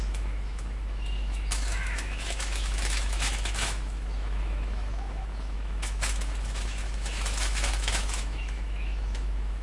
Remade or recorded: remade